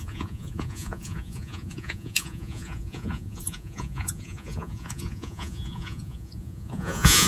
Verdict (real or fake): fake